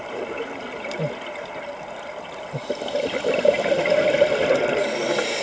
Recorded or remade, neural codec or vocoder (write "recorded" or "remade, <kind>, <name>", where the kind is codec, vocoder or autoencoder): recorded